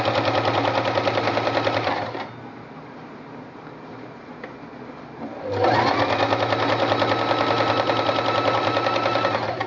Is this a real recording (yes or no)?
yes